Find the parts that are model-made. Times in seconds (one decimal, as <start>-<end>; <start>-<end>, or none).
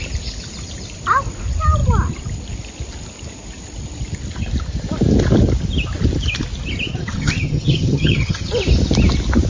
6.9-8.5